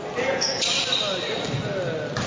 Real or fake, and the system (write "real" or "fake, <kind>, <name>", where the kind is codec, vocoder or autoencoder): real